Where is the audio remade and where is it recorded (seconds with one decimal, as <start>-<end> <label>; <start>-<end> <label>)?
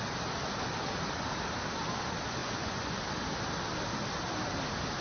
0.0-2.4 recorded; 2.4-3.0 remade; 3.0-5.0 recorded